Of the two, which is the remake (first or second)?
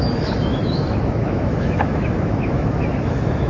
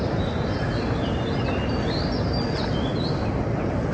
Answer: first